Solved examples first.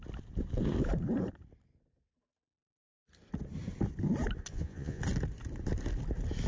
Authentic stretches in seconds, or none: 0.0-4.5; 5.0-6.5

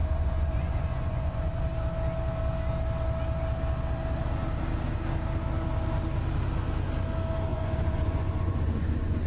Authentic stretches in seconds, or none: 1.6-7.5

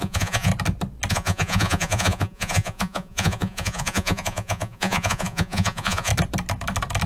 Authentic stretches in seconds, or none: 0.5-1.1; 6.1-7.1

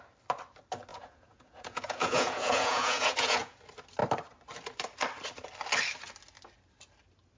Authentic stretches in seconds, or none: 0.0-0.9; 3.6-7.4

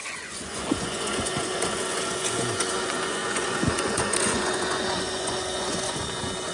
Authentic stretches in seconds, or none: none

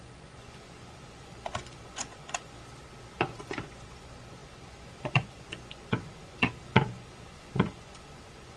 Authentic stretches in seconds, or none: 2.6-3.1